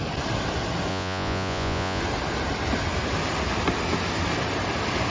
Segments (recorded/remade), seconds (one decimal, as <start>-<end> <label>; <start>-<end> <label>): 0.0-0.9 recorded; 0.9-2.0 remade; 2.0-5.1 recorded